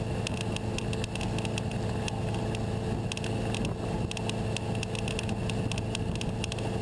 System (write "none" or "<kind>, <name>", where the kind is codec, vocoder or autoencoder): none